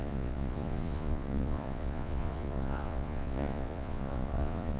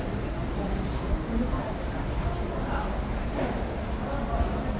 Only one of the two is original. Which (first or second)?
second